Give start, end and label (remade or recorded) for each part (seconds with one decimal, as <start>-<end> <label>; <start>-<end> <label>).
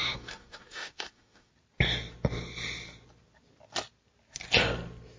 0.0-1.5 remade; 1.5-5.2 recorded